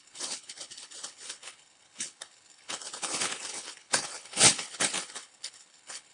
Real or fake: fake